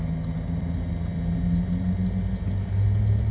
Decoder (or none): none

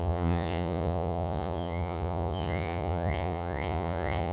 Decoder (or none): vocoder, Vocos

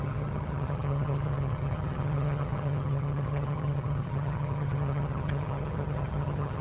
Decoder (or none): vocoder, HiFi-GAN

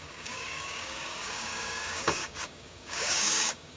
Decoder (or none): codec, DAC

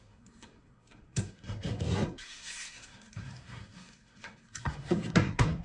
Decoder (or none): codec, SNAC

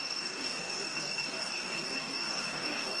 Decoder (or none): codec, DAC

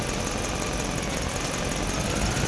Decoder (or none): none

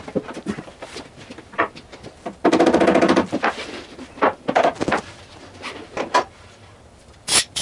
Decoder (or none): vocoder, BigVGAN v2